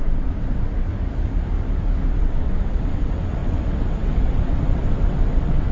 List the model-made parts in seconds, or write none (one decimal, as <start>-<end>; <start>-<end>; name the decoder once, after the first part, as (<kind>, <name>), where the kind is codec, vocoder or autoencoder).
0.0-0.9 (vocoder, WaveNeXt); 2.1-5.7